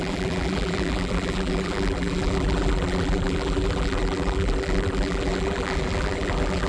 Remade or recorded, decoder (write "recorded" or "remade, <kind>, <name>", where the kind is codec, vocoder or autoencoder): remade, vocoder, BigVGAN v2